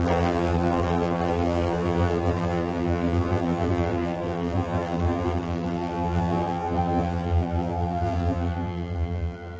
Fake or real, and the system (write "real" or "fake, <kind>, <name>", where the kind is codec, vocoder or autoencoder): fake, vocoder, BigVGAN v2